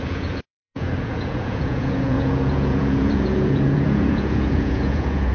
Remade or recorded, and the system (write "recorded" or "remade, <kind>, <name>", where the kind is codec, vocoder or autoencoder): remade, vocoder, Vocos